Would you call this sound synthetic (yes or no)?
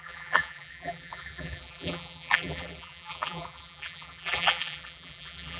yes